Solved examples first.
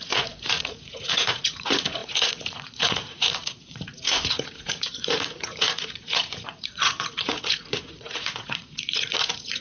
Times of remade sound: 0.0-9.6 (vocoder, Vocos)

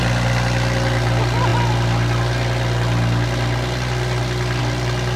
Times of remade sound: none

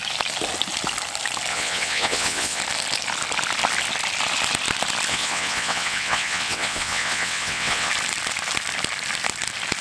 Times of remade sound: 1.5-2.6 (vocoder, WaveNeXt); 5.1-7.9

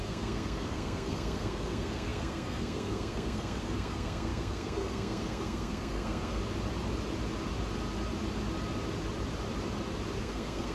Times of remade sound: 0.0-6.4 (codec, SNAC); 10.2-10.7

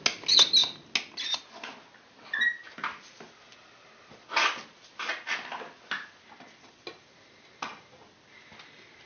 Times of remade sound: none

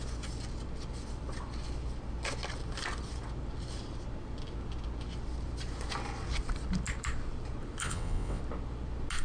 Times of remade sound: 7.8-8.4 (vocoder, WaveNeXt)

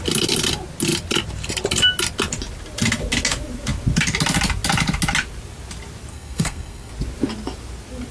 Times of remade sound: 6.1-6.9 (codec, SNAC)

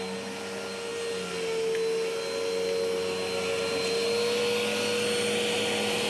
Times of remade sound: none